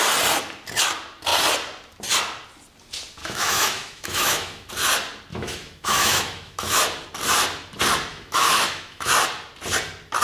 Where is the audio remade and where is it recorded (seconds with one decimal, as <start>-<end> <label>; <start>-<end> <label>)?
0.0-3.2 recorded; 3.2-4.7 remade; 4.7-5.3 recorded; 5.3-6.8 remade; 6.8-8.1 recorded; 8.1-9.1 remade; 9.1-10.2 recorded